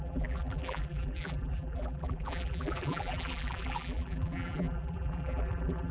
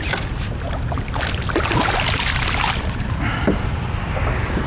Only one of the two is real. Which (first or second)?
second